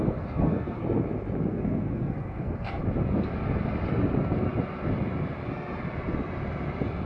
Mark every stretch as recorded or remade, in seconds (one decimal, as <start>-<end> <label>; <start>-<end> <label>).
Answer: 0.0-0.8 remade; 0.8-1.5 recorded; 1.5-2.8 remade; 2.8-7.1 recorded